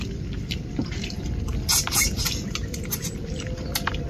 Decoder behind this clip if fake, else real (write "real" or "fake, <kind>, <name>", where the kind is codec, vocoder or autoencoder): real